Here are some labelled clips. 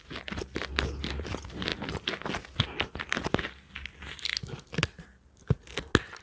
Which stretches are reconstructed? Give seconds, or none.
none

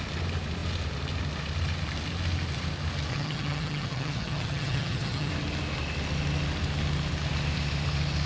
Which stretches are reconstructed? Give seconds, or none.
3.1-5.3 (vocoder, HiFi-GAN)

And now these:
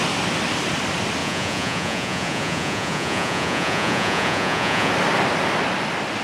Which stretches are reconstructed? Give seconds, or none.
1.2-4.9 (vocoder, Vocos)